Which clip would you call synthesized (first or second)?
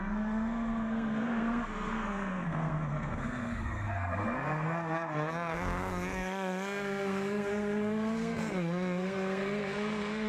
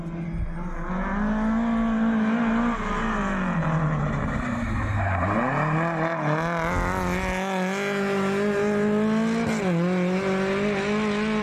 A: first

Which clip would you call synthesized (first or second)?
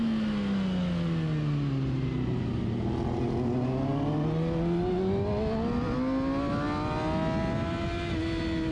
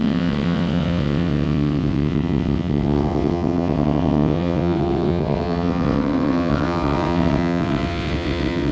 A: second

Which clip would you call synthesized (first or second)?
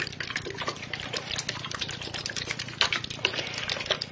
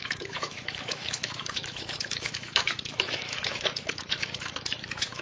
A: second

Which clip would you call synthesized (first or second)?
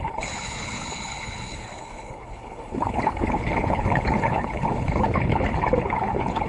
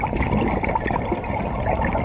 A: first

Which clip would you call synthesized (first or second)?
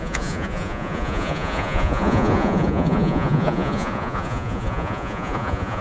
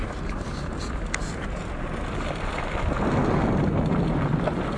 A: first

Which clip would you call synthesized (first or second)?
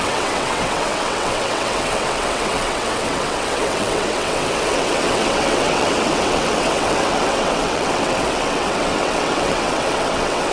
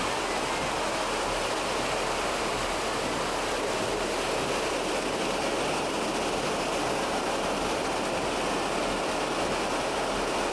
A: first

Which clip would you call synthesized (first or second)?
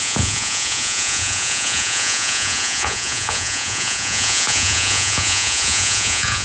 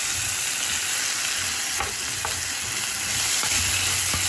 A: first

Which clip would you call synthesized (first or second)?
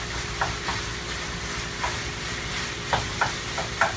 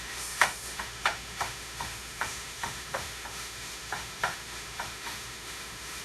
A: second